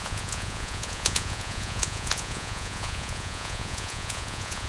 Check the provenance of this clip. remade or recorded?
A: remade